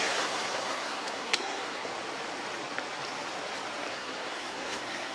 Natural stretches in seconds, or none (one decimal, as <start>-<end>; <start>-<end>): 1.9-3.9